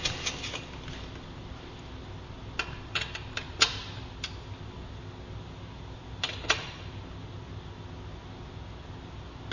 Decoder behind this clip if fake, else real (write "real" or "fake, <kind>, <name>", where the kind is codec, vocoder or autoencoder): real